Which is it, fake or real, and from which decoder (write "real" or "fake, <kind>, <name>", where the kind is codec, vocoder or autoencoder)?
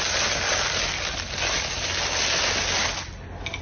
real